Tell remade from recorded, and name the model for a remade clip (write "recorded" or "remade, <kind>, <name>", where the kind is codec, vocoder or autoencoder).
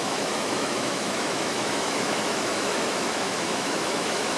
remade, autoencoder, DAC-VAE